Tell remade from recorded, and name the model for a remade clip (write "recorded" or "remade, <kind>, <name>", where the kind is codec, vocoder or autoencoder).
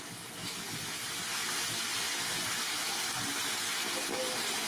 recorded